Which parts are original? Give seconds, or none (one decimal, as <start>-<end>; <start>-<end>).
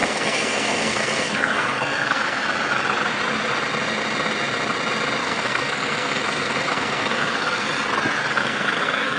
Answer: 2.4-5.2; 7.7-8.3